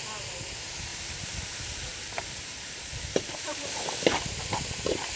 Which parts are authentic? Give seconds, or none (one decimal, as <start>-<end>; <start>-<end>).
0.0-0.9; 3.8-5.2